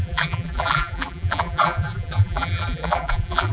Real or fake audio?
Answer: fake